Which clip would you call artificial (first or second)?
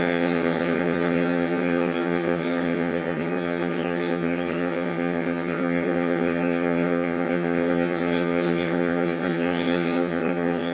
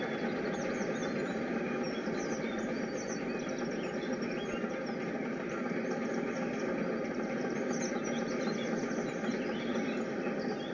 first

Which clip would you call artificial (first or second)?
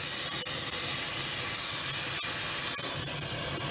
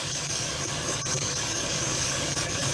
second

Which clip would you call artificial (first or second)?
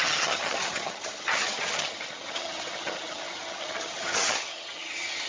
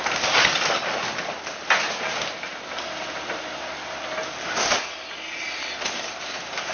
first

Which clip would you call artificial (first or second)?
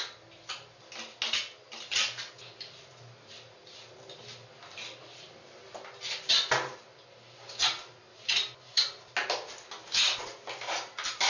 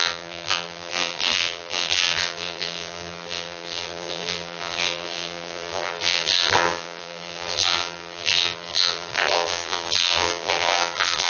second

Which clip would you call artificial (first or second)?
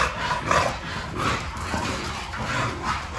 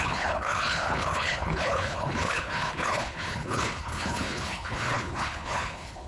second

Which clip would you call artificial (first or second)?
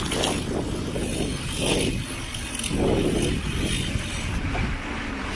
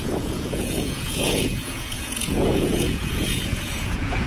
second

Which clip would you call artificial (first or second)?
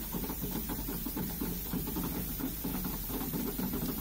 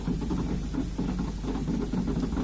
first